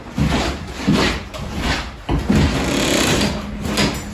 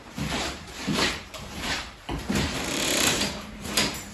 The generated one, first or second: second